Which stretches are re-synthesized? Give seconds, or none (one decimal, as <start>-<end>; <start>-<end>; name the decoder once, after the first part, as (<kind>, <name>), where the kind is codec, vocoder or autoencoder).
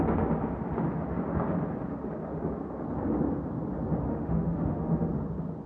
4.1-5.1 (autoencoder, DAC-VAE)